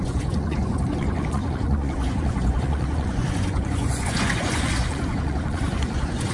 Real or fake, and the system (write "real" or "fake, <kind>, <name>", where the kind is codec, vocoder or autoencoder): fake, vocoder, Vocos